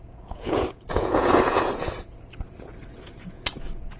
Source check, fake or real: fake